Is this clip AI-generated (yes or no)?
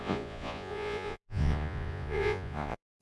yes